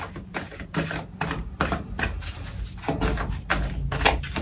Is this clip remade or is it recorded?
recorded